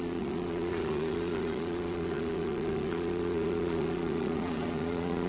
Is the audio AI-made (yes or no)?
yes